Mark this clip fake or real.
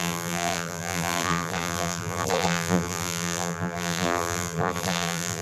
fake